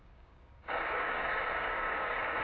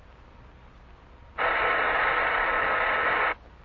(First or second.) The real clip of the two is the second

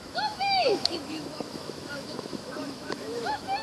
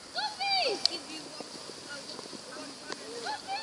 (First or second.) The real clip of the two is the second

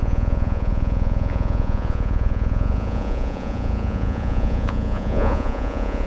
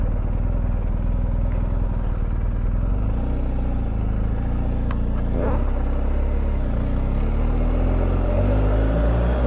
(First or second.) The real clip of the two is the second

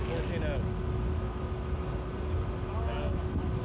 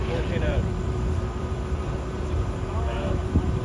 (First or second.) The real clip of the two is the first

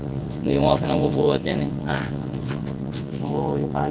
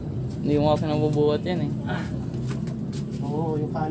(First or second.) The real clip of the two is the second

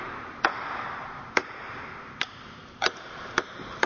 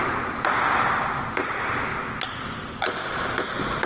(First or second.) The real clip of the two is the second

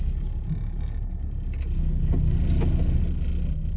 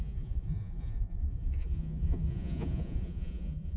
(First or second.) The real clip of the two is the first